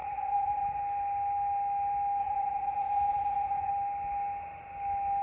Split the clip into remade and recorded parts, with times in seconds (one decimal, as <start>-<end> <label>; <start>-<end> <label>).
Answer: 0.0-0.8 remade; 0.8-2.2 recorded; 2.2-3.7 remade; 3.7-5.2 recorded